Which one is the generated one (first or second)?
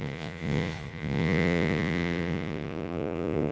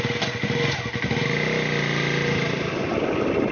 first